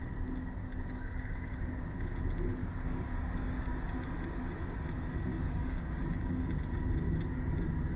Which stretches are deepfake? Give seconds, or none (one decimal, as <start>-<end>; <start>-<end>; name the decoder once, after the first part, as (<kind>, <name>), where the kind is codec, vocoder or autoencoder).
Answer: 0.6-2.1 (codec, DAC); 2.6-4.1; 5.3-6.3